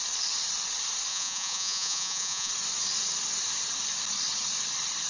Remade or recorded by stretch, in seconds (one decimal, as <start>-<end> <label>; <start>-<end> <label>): 0.0-1.1 recorded; 1.1-2.5 remade; 2.5-5.1 recorded